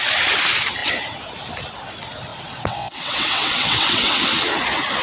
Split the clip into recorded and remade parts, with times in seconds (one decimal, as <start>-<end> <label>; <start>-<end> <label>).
0.0-2.3 recorded; 2.3-4.2 remade; 4.2-5.0 recorded